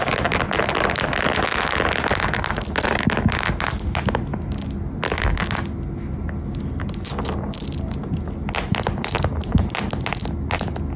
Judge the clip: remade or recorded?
recorded